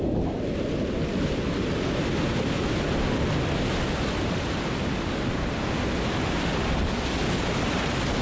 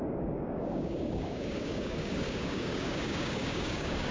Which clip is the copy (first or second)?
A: second